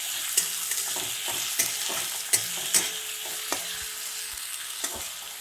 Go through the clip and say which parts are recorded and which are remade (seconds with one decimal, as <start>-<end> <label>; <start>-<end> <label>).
0.0-4.2 recorded; 4.2-4.8 remade; 4.8-5.4 recorded